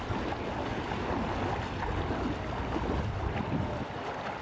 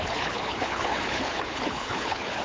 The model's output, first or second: second